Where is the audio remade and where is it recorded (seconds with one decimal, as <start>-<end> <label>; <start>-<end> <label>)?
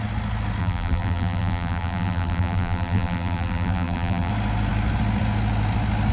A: 0.0-0.6 recorded; 0.6-4.3 remade; 4.3-6.1 recorded